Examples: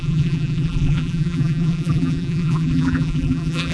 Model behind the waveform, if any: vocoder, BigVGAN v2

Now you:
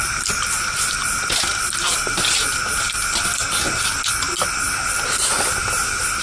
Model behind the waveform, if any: none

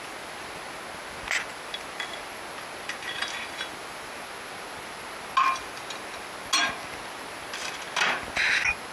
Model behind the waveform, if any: none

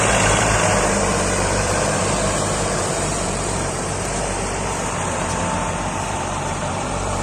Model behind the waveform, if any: vocoder, BigVGAN v2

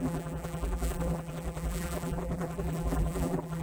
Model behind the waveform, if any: vocoder, BigVGAN v2